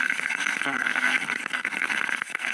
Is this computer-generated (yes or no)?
yes